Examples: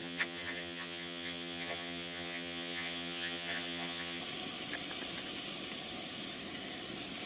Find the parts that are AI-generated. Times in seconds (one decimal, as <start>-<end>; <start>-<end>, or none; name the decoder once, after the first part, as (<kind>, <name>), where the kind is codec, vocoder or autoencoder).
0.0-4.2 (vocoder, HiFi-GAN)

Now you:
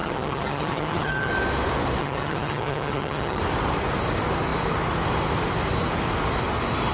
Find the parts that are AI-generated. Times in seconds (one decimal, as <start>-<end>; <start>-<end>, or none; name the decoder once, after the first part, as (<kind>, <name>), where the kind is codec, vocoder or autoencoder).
0.0-1.3 (vocoder, HiFi-GAN); 2.0-3.4

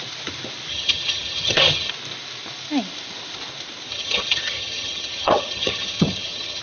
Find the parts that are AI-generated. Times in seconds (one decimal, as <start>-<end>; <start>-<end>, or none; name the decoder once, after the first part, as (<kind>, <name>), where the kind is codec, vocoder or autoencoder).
0.7-1.9 (vocoder, HiFi-GAN); 3.9-6.6

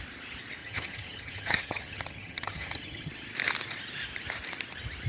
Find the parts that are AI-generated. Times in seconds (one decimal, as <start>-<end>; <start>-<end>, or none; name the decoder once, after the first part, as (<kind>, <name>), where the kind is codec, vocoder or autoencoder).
0.6-3.1 (vocoder, HiFi-GAN)

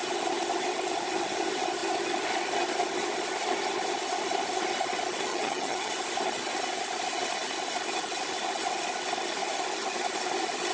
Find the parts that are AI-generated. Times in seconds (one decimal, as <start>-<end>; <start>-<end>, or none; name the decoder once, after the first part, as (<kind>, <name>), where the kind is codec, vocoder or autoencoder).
5.3-5.9 (vocoder, HiFi-GAN)

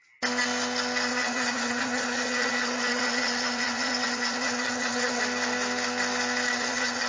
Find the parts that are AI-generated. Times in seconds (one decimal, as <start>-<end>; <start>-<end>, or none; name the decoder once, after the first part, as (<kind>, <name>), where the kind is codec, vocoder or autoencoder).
1.1-5.2 (vocoder, HiFi-GAN); 6.5-7.1

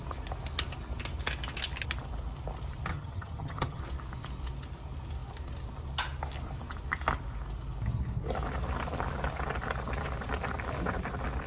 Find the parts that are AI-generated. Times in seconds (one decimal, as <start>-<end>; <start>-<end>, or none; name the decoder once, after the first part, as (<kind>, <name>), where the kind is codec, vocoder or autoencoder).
2.9-3.8 (vocoder, HiFi-GAN)